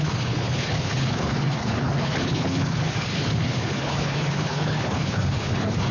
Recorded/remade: remade